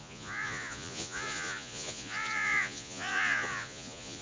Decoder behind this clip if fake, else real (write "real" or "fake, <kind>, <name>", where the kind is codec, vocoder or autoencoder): fake, vocoder, Vocos